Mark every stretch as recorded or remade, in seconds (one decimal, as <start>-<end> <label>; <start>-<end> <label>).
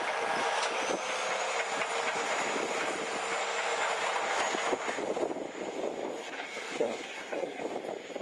0.0-6.2 recorded; 6.2-7.6 remade; 7.6-8.2 recorded